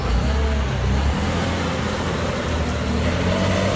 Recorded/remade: recorded